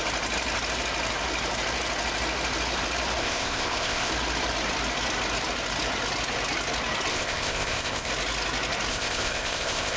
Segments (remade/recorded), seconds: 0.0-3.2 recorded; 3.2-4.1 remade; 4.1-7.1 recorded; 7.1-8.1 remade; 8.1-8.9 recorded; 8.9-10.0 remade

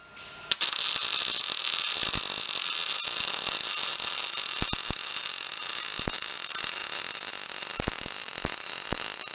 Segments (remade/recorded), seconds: 0.0-9.3 recorded

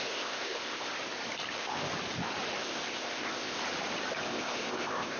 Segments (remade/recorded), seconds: 0.0-0.9 remade; 0.9-1.5 recorded; 1.5-1.9 remade; 1.9-2.6 recorded; 2.6-3.6 remade; 3.6-4.2 recorded; 4.2-5.2 remade

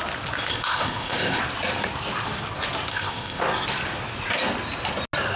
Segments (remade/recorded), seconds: 0.0-0.5 recorded; 0.5-1.4 remade; 1.4-2.9 recorded; 2.9-3.4 remade; 3.4-5.4 recorded

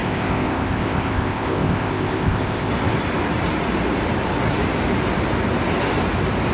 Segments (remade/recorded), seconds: 0.0-2.7 remade; 2.7-6.5 recorded